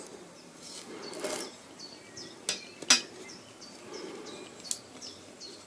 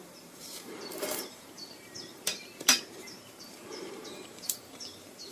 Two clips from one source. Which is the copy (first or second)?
second